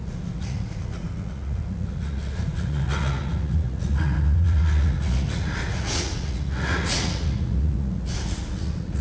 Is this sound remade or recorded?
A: remade